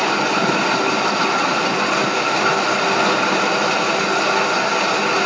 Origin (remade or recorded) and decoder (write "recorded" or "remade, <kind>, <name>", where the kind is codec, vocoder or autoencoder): recorded